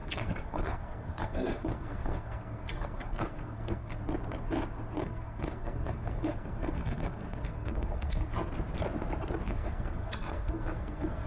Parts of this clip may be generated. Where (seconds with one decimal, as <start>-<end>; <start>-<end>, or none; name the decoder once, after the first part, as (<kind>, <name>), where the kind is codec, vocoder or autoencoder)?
0.0-4.0 (codec, SNAC); 5.0-8.3; 9.5-11.3